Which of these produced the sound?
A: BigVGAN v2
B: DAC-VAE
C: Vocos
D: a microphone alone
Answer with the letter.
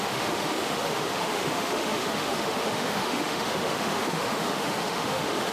B